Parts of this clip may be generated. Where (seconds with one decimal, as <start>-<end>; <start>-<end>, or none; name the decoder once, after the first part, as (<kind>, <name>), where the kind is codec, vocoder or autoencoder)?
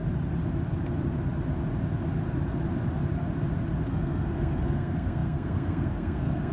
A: 3.9-6.5 (codec, SNAC)